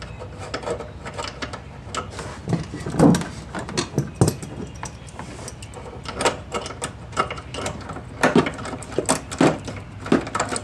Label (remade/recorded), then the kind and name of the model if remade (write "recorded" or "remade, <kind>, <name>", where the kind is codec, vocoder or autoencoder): recorded